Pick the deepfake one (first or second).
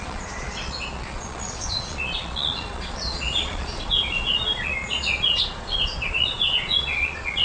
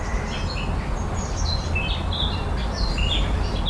first